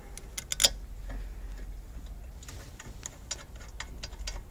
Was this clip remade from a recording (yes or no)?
no